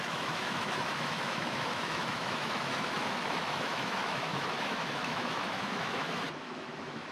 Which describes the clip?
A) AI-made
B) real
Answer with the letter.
A